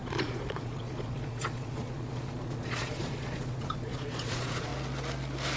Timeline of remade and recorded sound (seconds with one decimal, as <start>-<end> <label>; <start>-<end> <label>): 0.0-4.7 remade; 4.7-5.6 recorded